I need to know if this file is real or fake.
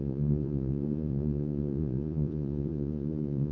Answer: fake